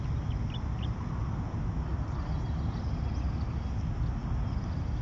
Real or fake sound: real